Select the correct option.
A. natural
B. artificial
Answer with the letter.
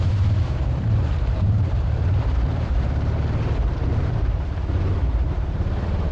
B